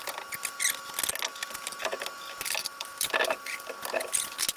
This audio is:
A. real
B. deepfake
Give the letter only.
A